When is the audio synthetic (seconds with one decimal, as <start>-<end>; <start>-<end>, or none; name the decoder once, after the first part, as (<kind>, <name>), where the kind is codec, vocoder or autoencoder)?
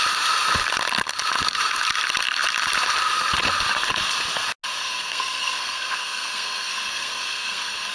4.8-7.9 (codec, SNAC)